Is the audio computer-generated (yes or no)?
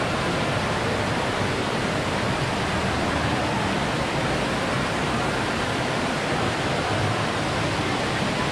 yes